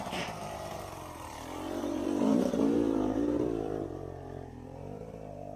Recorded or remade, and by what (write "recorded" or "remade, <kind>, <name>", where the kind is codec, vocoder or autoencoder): remade, vocoder, BigVGAN v2